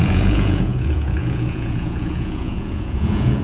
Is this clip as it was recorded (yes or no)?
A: no